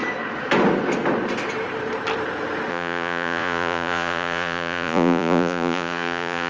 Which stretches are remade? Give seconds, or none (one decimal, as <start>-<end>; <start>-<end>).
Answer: 2.7-6.5